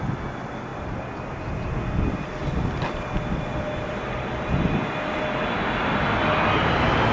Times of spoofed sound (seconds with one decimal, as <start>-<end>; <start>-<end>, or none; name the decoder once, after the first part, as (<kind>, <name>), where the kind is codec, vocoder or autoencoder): none